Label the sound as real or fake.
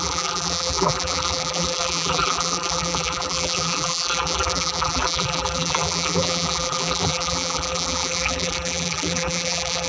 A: fake